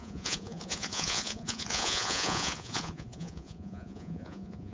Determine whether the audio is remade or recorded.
remade